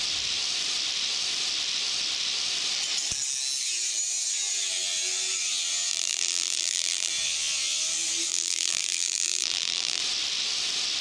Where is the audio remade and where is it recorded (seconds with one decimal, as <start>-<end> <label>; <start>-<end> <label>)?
0.0-5.9 recorded; 5.9-7.1 remade; 7.1-8.3 recorded; 8.3-10.0 remade; 10.0-11.0 recorded